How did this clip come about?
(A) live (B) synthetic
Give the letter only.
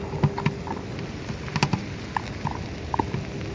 A